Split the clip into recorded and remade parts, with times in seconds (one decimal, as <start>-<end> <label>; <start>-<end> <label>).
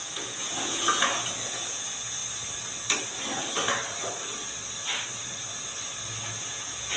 0.0-2.2 remade; 2.2-6.4 recorded; 6.4-7.0 remade